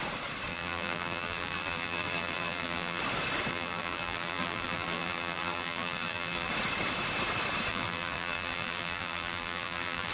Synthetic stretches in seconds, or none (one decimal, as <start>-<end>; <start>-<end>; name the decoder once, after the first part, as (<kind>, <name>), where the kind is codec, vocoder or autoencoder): 0.5-3.0 (vocoder, BigVGAN v2); 3.5-6.5; 7.7-10.1